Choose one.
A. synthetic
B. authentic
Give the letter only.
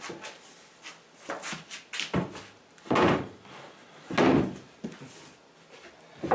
B